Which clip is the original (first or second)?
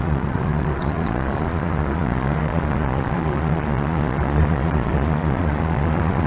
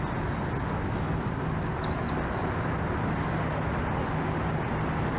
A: second